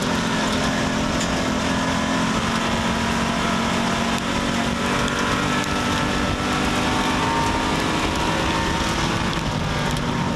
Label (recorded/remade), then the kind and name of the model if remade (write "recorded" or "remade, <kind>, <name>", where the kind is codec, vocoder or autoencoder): recorded